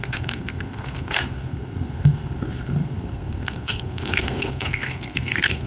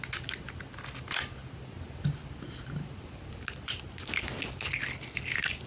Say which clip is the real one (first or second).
second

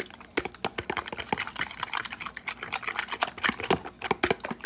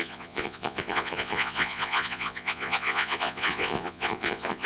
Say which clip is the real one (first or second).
first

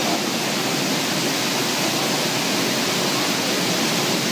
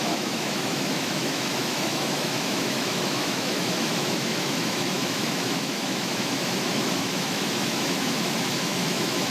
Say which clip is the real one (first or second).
first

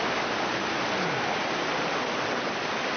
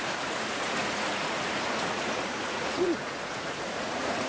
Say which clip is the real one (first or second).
first